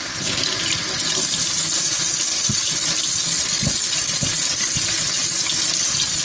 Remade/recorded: recorded